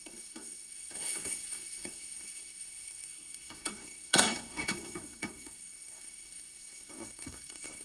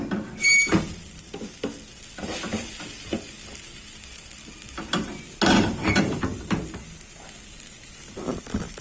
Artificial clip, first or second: first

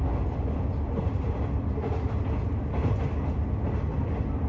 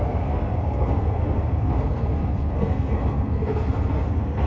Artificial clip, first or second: second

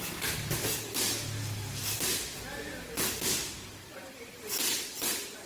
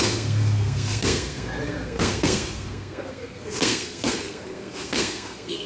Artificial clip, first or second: second